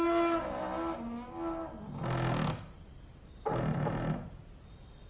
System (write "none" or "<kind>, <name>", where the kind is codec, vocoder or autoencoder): none